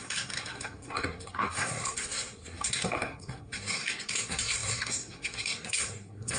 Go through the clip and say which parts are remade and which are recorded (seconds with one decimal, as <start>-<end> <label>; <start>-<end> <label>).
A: 0.0-6.4 remade